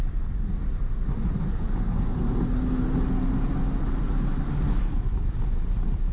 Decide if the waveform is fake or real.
real